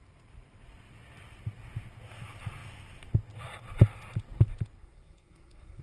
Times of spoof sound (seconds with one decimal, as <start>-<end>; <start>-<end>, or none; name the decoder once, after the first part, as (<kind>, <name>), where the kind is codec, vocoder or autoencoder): 4.8-5.8 (codec, SNAC)